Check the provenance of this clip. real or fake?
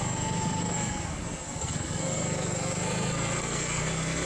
fake